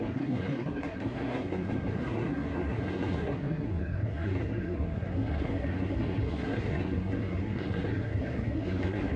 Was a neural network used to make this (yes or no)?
yes